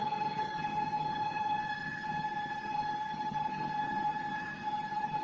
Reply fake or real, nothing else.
fake